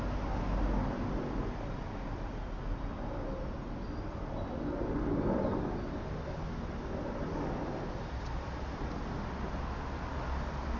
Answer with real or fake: real